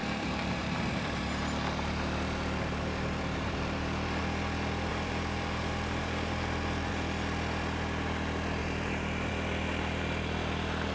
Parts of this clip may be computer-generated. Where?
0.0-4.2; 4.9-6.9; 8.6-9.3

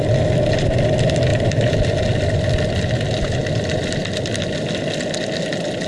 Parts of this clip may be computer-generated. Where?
1.3-1.8

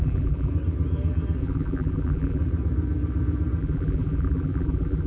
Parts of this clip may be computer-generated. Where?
0.0-0.5; 1.4-2.4; 3.6-5.1

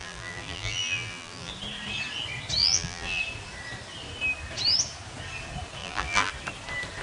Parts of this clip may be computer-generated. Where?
0.0-1.5; 2.6-3.2; 5.8-6.3

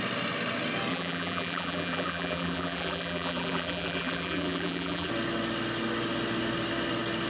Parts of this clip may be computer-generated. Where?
0.9-5.1

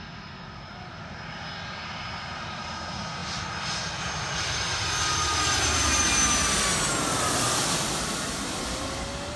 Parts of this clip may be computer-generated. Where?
none

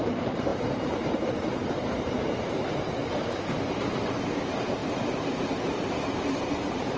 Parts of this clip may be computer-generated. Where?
0.0-7.0

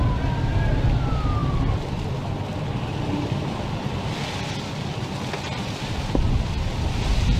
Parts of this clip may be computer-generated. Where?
none